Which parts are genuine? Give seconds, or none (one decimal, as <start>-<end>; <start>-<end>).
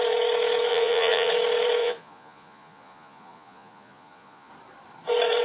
0.0-0.7; 1.3-1.8; 4.5-5.4